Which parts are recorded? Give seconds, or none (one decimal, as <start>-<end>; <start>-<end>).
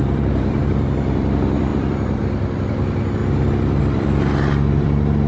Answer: 3.2-3.8